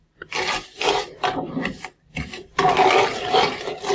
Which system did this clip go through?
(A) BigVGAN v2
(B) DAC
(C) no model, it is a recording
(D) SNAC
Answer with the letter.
A